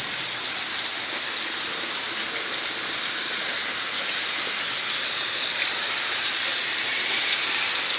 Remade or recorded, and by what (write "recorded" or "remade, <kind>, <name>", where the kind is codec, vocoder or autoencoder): recorded